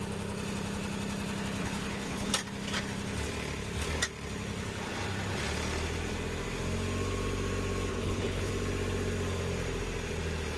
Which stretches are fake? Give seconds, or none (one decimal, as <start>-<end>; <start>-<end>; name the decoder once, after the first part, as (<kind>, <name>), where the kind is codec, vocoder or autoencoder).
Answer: 1.6-2.3 (codec, HILCodec); 7.9-8.5